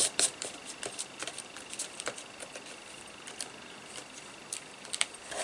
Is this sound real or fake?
fake